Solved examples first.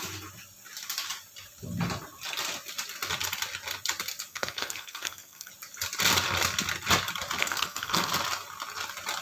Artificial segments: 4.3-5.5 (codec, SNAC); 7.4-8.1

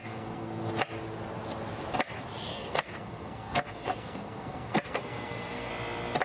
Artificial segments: 0.0-0.7 (codec, SNAC); 2.5-5.7

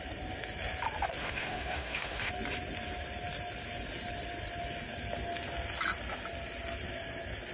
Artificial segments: 1.2-2.3 (autoencoder, DAC-VAE)

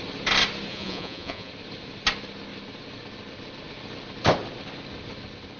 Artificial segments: 0.7-1.5 (vocoder, Vocos)

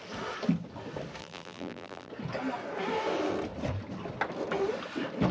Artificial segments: 1.2-2.1 (vocoder, BigVGAN v2)